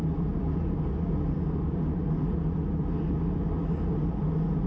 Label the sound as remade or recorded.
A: recorded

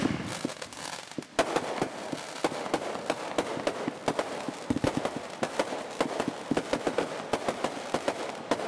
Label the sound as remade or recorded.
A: recorded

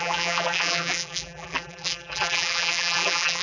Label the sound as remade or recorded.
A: remade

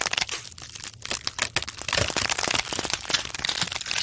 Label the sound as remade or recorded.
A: recorded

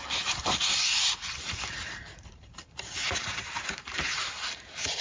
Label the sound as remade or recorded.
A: remade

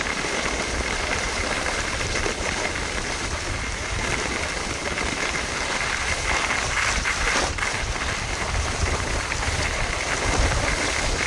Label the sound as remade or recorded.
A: remade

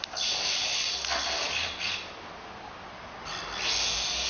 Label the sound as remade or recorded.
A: recorded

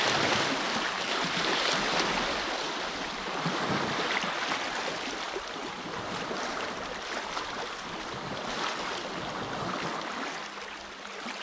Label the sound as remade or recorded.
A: recorded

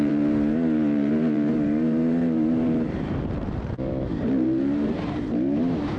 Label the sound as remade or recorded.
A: remade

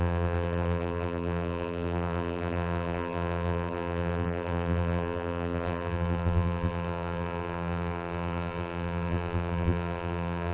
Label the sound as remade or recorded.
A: remade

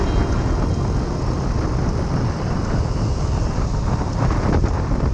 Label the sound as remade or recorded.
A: recorded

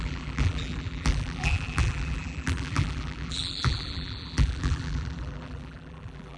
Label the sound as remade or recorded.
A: remade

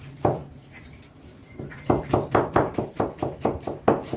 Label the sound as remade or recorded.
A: remade